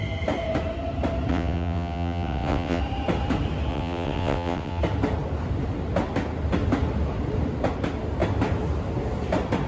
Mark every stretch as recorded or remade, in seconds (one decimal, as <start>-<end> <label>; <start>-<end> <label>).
0.0-1.3 recorded; 1.3-2.8 remade; 2.8-3.7 recorded; 3.7-4.8 remade; 4.8-9.7 recorded